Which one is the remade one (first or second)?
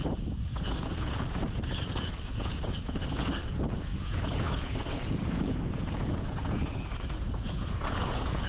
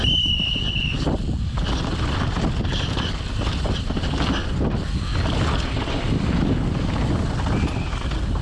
first